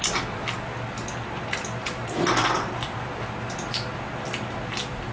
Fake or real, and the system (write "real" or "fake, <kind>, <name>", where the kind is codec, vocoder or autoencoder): real